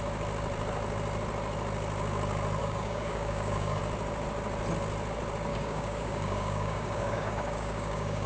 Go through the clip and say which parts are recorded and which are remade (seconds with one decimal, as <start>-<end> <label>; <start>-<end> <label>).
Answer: 0.0-2.6 recorded; 2.6-3.8 remade; 3.8-5.5 recorded; 5.5-8.3 remade